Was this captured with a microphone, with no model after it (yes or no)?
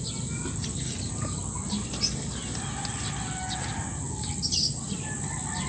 yes